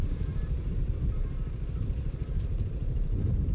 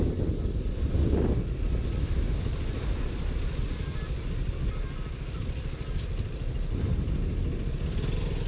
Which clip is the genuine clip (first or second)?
second